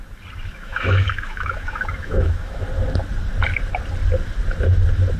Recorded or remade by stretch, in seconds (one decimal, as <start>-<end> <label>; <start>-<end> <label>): 0.0-0.5 recorded; 0.5-2.6 remade; 2.6-5.2 recorded

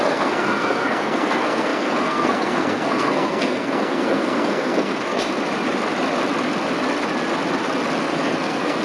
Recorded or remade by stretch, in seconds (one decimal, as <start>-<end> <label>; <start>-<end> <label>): 0.0-5.2 remade; 5.2-8.0 recorded; 8.0-8.8 remade

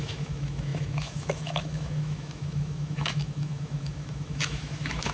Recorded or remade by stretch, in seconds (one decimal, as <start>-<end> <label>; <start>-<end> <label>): 0.0-5.1 remade

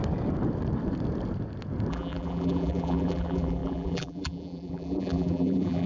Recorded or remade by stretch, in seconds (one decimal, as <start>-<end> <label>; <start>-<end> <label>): 0.0-1.9 recorded; 1.9-5.9 remade

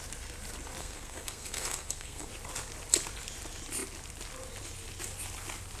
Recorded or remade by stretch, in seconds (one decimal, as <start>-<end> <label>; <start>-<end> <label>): 0.0-0.8 recorded; 0.8-2.3 remade; 2.3-5.8 recorded

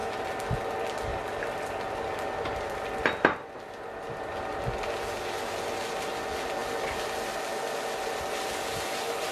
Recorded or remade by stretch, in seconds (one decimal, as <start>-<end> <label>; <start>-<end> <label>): 0.0-1.1 recorded; 1.1-4.3 remade; 4.3-9.3 recorded